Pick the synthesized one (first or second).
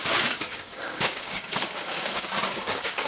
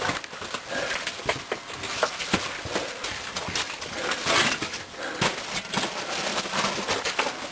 first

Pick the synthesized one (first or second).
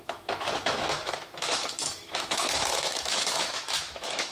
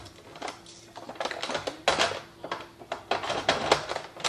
first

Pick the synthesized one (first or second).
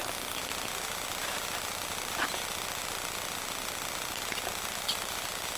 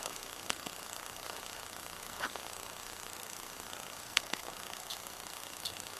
second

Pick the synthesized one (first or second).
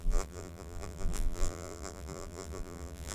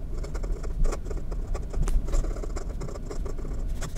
first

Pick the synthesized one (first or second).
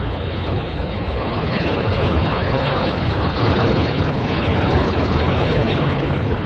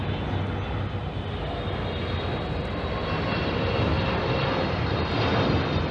first